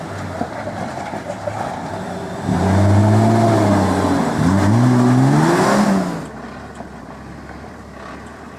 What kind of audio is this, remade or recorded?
recorded